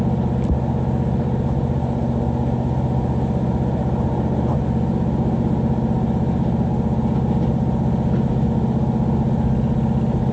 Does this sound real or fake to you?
real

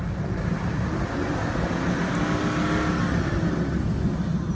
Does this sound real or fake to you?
real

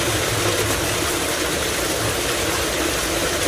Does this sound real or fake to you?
real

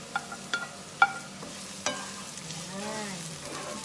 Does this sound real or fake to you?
real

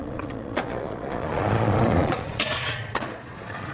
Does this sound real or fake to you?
fake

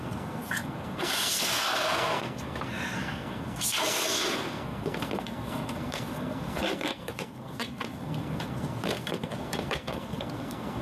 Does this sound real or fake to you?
fake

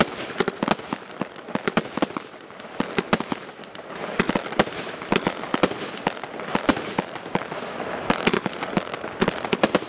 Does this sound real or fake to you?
fake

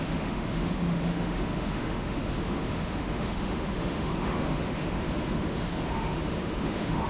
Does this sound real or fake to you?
fake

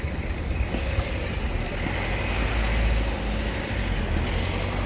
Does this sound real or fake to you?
real